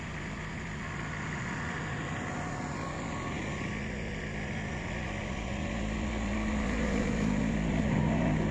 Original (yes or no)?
yes